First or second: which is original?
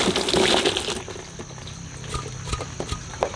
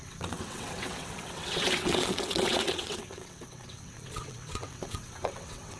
first